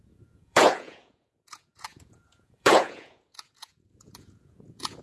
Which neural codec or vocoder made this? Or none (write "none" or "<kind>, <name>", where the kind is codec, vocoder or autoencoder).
vocoder, Vocos